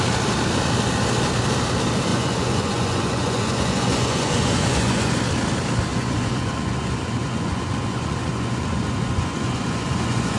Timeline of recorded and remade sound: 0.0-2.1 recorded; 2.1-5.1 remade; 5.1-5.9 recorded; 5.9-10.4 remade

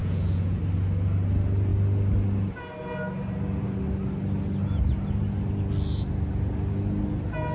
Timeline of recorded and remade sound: 0.0-0.6 remade; 0.6-7.5 recorded

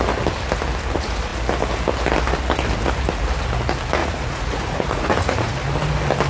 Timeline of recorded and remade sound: 0.0-4.0 recorded; 4.0-5.5 remade; 5.5-6.3 recorded

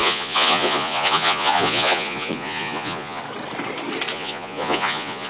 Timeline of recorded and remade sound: 0.0-3.2 remade; 3.2-4.1 recorded; 4.1-5.3 remade

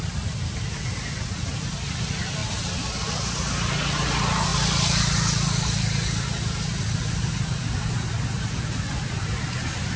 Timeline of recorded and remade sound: 0.0-10.0 recorded

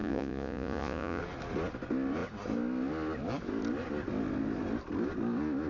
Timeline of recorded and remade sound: 0.0-1.2 remade; 1.2-5.7 recorded

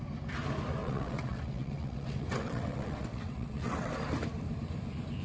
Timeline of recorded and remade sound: 0.0-0.8 recorded; 0.8-3.9 remade; 3.9-5.2 recorded

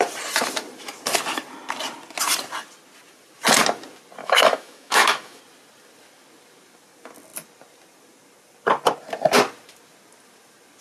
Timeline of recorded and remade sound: 0.0-4.2 recorded; 4.2-5.4 remade; 5.4-10.8 recorded